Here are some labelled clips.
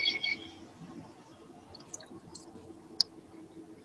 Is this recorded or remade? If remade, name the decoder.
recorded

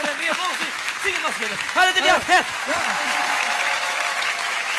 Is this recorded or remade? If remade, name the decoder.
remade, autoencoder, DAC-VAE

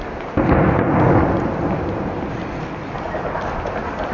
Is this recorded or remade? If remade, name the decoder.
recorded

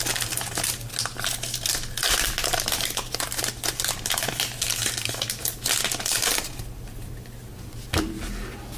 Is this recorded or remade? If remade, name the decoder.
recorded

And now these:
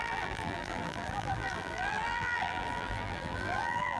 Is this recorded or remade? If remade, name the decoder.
remade, vocoder, BigVGAN v2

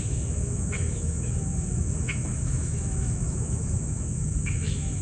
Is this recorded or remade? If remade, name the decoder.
remade, autoencoder, DAC-VAE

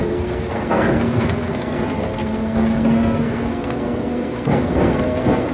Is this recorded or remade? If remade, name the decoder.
remade, codec, SNAC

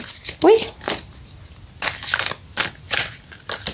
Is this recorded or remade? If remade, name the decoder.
recorded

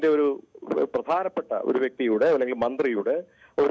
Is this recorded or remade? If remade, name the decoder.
remade, autoencoder, DAC-VAE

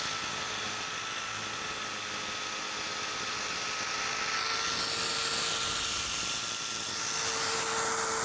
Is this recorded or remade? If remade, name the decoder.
recorded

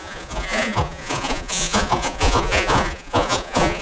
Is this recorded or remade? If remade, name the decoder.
remade, vocoder, Vocos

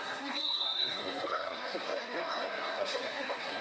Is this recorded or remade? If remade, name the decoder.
remade, codec, SNAC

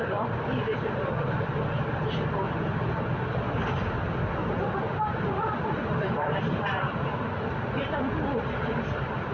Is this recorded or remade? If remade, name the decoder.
remade, vocoder, BigVGAN v2